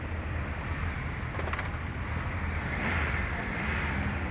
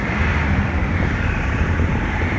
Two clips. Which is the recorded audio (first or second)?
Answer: first